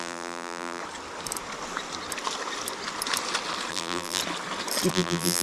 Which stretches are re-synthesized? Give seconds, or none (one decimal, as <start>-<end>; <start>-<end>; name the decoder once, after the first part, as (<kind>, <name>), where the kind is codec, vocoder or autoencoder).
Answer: 0.0-0.8 (vocoder, BigVGAN v2); 3.7-4.2; 4.9-5.4